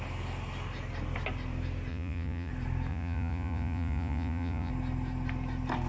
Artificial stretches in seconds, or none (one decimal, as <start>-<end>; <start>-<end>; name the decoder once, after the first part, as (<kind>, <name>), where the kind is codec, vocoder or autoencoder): 1.9-2.5 (vocoder, Vocos); 2.9-4.7